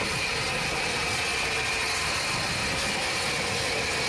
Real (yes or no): yes